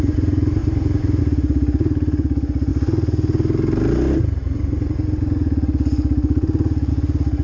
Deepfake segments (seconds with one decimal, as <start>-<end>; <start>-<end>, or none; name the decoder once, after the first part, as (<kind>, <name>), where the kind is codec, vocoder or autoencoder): 0.0-2.7 (vocoder, BigVGAN v2); 6.9-7.4